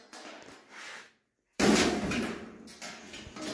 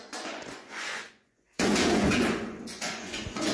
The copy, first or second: second